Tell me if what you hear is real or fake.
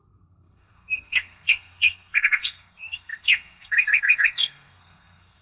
fake